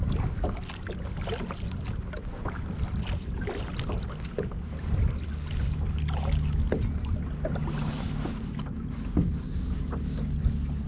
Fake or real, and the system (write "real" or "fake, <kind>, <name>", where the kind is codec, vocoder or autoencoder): real